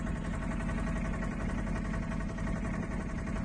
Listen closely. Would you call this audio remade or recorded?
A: recorded